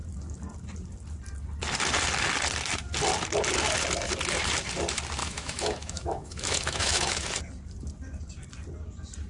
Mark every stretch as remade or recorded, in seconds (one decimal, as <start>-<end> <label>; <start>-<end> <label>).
0.0-5.2 recorded; 5.2-7.4 remade; 7.4-9.3 recorded